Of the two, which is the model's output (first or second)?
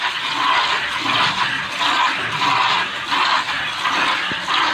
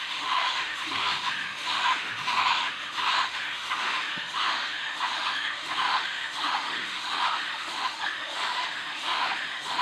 second